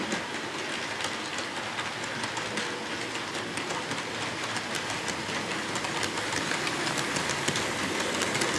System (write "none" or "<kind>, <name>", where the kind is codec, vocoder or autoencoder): none